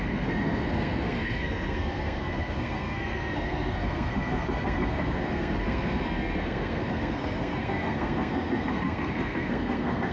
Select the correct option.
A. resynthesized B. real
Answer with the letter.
A